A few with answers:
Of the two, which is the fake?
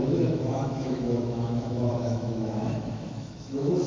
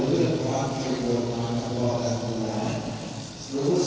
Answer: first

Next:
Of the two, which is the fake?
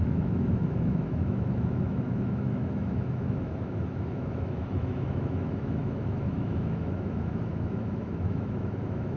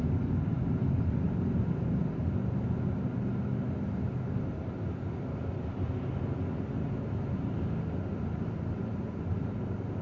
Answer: first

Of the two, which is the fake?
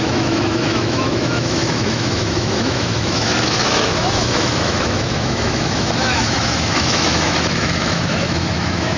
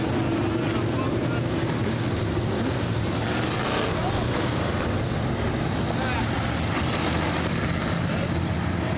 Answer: first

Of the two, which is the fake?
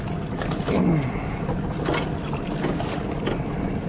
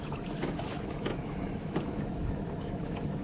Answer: second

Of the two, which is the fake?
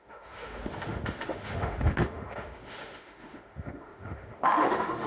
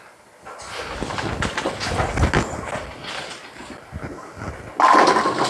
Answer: first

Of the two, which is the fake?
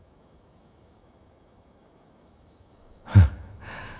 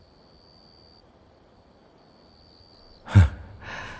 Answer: first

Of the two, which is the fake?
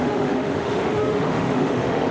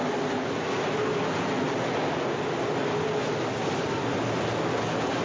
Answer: first